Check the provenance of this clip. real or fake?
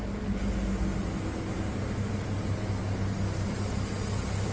real